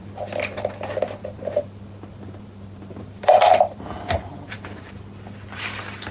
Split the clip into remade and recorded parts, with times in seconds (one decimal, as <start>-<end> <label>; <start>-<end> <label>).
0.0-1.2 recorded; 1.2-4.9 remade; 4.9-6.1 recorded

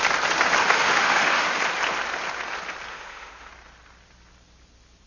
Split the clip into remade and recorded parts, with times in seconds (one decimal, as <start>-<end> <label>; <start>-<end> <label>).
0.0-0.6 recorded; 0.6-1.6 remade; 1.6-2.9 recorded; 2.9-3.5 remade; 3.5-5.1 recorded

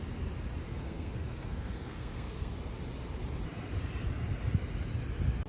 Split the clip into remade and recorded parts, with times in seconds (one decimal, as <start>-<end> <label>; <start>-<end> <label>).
0.0-0.7 recorded; 0.7-2.5 remade; 2.5-5.5 recorded

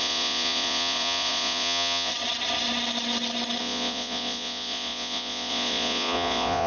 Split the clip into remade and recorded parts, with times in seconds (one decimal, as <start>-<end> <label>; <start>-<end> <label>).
0.0-2.1 remade; 2.1-3.6 recorded; 3.6-6.7 remade

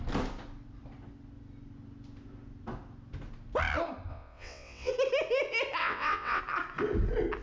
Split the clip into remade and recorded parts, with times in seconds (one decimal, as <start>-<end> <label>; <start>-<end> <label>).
0.0-4.1 recorded; 4.1-4.9 remade; 4.9-5.8 recorded; 5.8-6.4 remade; 6.4-7.4 recorded

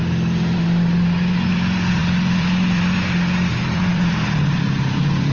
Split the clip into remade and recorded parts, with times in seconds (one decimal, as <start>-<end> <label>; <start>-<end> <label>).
0.0-5.3 remade

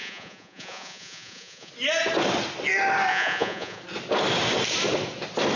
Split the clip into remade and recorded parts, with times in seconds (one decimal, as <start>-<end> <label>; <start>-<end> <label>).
0.0-1.7 remade; 1.7-3.1 recorded; 3.1-3.8 remade; 3.8-5.6 recorded

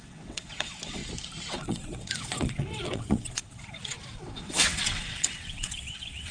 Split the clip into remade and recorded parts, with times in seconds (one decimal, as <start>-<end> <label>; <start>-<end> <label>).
0.0-1.0 remade; 1.0-1.5 recorded; 1.5-6.3 remade